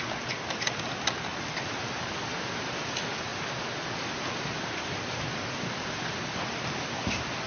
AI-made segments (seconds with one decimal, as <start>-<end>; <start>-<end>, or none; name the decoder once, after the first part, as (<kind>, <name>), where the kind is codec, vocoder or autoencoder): none